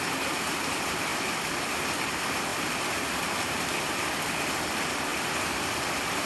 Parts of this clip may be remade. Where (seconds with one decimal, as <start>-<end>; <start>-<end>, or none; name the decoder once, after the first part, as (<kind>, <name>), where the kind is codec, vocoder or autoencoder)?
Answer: 2.5-4.2 (vocoder, BigVGAN v2); 5.1-6.3